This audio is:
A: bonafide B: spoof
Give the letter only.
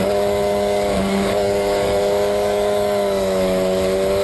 B